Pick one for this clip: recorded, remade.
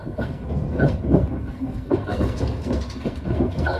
remade